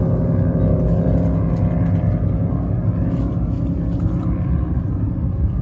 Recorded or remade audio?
recorded